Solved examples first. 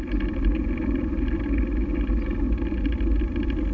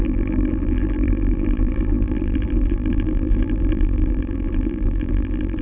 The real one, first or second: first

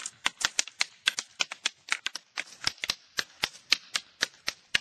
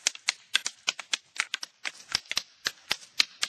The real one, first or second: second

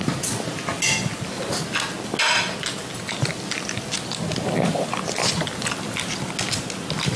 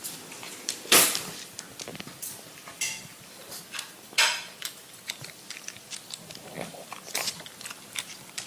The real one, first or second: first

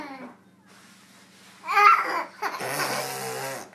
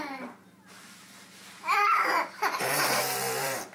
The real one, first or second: first